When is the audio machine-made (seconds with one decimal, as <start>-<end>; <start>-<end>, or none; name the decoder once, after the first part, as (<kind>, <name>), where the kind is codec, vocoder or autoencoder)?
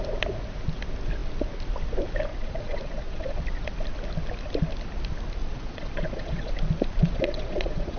2.3-3.4 (vocoder, Vocos); 5.4-6.5; 7.0-8.0